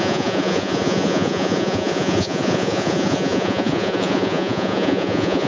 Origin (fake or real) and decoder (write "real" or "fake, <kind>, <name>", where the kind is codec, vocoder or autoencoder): fake, vocoder, Vocos